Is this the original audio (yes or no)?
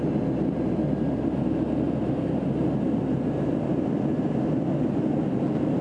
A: yes